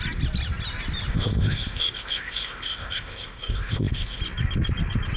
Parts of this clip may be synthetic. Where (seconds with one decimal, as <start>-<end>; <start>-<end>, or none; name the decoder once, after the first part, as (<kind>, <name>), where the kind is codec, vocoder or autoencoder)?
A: 1.1-4.2 (codec, ZipCodec)

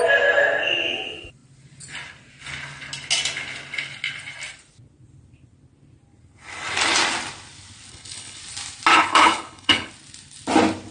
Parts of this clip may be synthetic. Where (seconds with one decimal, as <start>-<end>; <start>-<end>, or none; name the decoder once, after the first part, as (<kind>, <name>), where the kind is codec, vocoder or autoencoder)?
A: 7.9-8.4 (codec, HILCodec); 8.9-9.9

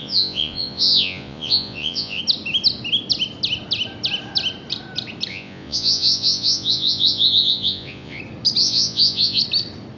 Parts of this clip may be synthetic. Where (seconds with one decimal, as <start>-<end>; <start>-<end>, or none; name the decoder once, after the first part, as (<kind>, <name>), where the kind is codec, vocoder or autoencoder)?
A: 0.0-2.2 (vocoder, Vocos); 5.3-8.2; 8.6-9.4

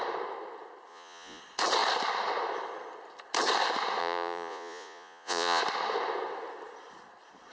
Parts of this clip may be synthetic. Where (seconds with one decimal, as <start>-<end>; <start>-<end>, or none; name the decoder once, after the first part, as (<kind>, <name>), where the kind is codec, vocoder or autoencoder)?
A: 0.9-1.4 (vocoder, Vocos); 4.0-5.6

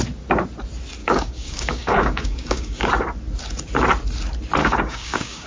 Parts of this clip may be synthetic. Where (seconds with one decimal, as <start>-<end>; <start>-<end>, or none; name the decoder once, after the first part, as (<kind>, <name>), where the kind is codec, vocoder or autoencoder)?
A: 1.0-2.9 (codec, DAC); 4.6-5.5

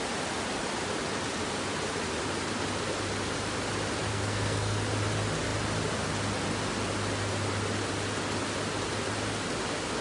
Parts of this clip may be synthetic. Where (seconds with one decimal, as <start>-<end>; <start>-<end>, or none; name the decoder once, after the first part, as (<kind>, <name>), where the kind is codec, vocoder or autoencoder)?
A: 4.1-4.8 (codec, SNAC)

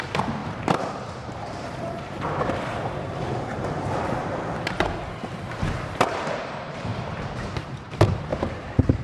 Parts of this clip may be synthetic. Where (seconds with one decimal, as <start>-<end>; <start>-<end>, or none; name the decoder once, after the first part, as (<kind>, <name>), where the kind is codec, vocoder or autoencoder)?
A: 0.0-6.9 (vocoder, BigVGAN v2); 7.5-9.0

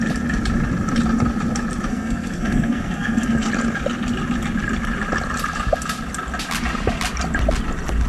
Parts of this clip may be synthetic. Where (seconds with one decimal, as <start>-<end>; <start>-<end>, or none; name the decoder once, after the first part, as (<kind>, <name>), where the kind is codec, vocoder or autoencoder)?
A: 1.9-3.5 (codec, SNAC)